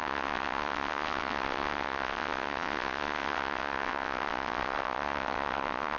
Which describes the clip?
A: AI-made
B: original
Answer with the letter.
A